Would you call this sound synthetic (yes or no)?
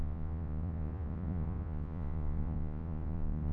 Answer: yes